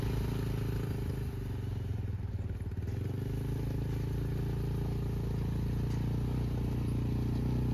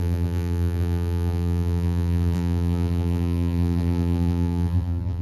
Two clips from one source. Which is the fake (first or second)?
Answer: second